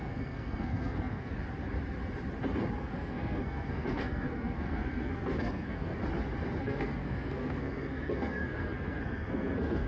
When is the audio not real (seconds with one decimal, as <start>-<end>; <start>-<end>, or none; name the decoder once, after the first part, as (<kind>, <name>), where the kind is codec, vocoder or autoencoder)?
0.0-1.3 (codec, SNAC); 2.8-6.0; 6.6-9.9